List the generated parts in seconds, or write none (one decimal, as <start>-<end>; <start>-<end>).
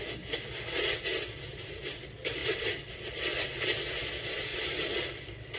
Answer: 4.5-5.6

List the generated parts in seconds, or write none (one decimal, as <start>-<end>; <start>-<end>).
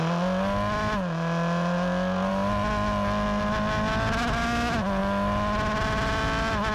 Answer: none